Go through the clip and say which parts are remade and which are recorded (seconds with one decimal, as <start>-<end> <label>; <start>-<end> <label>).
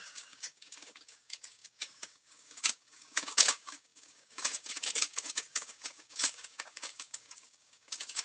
0.0-8.2 remade